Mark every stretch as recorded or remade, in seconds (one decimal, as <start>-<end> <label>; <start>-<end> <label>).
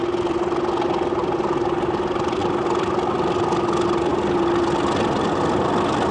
0.0-6.1 remade